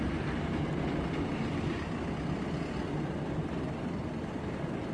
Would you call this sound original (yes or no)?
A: yes